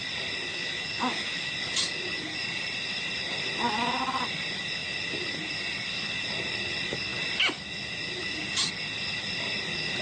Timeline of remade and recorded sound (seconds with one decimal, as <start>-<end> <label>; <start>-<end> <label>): 0.0-0.5 recorded; 0.5-1.5 remade; 1.5-10.0 recorded

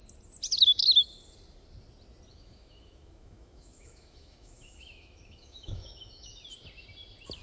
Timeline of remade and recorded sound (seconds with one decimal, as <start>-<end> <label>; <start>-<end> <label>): 0.0-2.3 recorded; 2.3-6.4 remade; 6.4-7.4 recorded

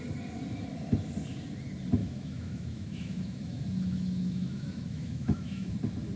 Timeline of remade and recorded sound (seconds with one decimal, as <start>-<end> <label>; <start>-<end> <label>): 0.0-2.0 recorded; 2.0-5.7 remade; 5.7-6.2 recorded

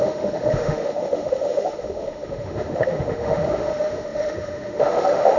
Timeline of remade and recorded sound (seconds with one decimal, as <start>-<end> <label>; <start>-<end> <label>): 0.0-5.4 remade

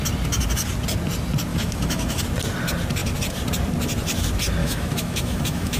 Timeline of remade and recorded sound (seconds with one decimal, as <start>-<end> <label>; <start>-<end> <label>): 0.0-1.5 recorded; 1.5-2.2 remade; 2.2-4.6 recorded; 4.6-5.8 remade

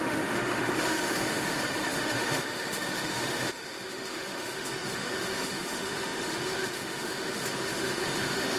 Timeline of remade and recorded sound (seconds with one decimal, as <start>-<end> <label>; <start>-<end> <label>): 0.0-8.6 remade

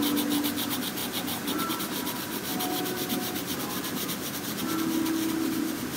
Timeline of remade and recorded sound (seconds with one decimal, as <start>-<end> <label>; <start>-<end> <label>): 0.0-6.0 recorded

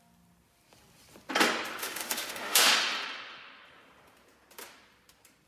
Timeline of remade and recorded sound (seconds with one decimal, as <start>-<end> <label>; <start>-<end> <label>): 0.0-1.8 recorded; 1.8-2.7 remade; 2.7-5.5 recorded